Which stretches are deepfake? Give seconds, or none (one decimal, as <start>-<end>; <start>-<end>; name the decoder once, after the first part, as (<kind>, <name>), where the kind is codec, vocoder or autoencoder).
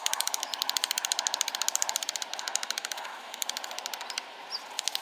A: 0.0-0.5 (autoencoder, DAC-VAE); 2.4-3.4